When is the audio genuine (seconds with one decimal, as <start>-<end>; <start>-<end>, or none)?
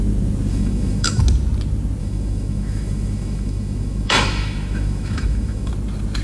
0.0-0.5; 1.2-2.0; 5.7-6.2